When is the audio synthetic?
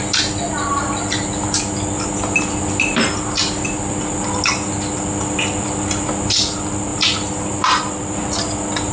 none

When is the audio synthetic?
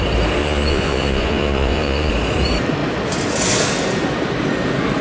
0.4-2.1 (vocoder, Vocos)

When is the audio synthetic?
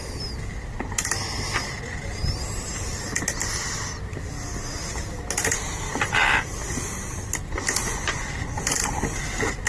7.8-8.6 (vocoder, Vocos)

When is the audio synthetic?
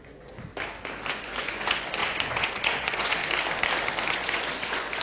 0.0-0.5 (vocoder, Vocos); 1.1-3.2; 4.1-5.0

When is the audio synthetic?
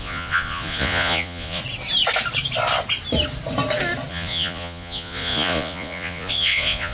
0.0-1.6 (vocoder, Vocos); 4.1-6.9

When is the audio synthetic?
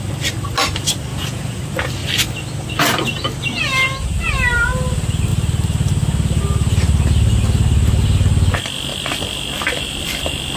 1.1-1.6 (vocoder, Vocos)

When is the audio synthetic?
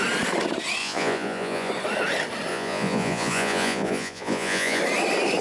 0.8-1.7 (vocoder, Vocos); 2.5-4.8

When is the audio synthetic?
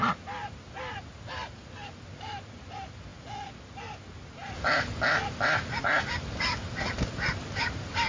none